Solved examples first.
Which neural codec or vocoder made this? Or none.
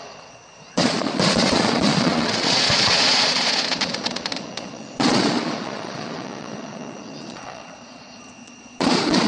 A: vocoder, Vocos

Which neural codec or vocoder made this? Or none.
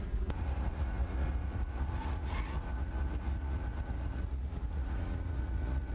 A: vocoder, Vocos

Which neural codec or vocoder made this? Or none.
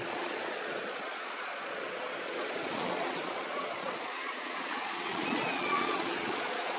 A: vocoder, Vocos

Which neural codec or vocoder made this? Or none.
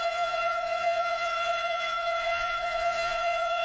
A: vocoder, Vocos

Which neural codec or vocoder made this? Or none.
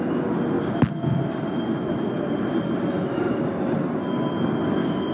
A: none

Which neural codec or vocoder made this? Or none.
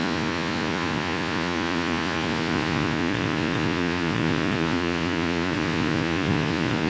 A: vocoder, Vocos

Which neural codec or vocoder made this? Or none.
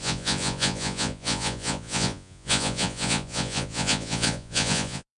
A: vocoder, Vocos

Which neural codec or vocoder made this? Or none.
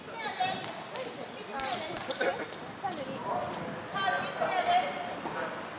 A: none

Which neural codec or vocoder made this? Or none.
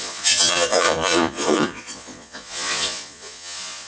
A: vocoder, Vocos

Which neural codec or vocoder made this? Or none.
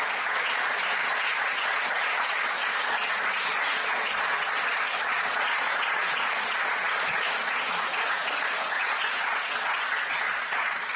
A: vocoder, Vocos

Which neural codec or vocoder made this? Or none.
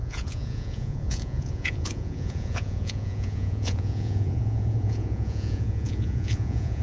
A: vocoder, Vocos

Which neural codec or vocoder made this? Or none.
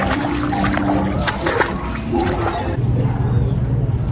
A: none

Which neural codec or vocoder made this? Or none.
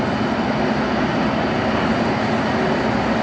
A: none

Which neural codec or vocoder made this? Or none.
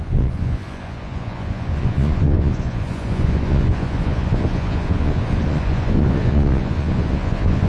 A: vocoder, Vocos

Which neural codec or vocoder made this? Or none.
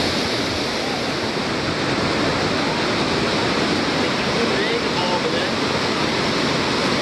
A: none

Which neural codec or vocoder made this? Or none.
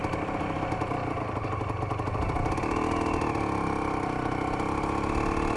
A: none